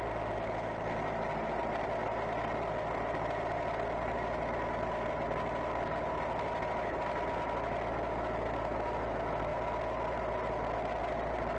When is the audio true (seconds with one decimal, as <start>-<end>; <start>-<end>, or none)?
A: 0.0-11.6

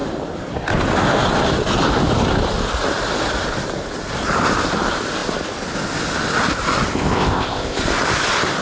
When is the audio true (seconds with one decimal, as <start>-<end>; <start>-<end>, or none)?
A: 0.0-6.9; 7.8-8.6